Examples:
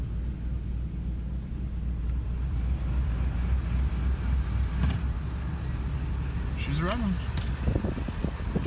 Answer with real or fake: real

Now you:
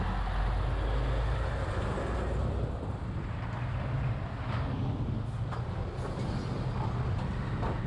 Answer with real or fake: real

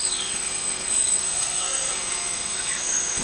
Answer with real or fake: fake